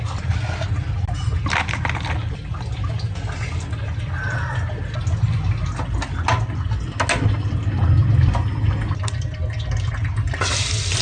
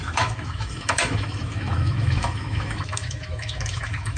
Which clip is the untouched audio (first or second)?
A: first